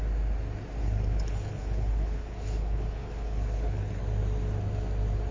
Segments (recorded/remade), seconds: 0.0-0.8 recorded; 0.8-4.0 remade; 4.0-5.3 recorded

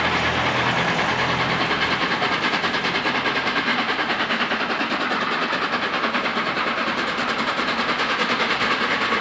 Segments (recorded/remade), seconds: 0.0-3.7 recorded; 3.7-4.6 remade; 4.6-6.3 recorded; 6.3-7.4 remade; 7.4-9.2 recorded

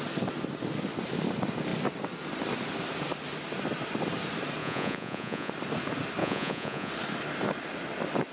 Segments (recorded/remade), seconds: 0.0-4.6 recorded; 4.6-5.5 remade; 5.5-6.2 recorded; 6.2-6.9 remade; 6.9-8.3 recorded